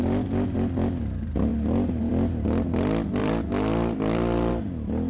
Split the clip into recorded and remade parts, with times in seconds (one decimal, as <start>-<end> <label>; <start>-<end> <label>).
0.0-3.2 recorded; 3.2-4.5 remade; 4.5-5.1 recorded